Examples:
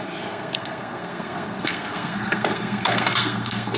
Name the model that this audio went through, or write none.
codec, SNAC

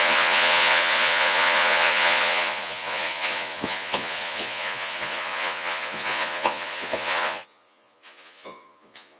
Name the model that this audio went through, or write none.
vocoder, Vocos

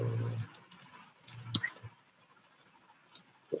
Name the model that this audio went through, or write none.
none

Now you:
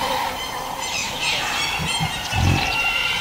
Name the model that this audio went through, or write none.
vocoder, BigVGAN v2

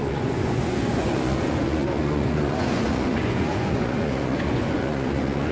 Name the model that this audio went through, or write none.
vocoder, Vocos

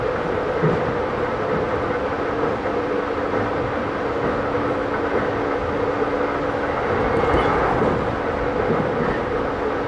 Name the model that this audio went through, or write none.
none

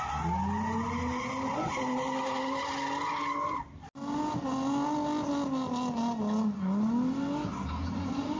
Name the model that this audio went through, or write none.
none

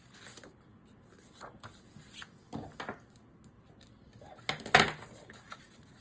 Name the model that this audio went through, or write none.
none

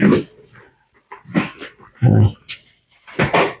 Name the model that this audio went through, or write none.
none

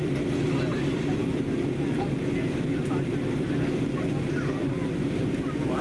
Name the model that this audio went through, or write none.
none